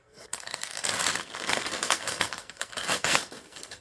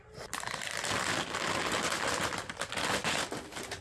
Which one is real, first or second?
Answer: second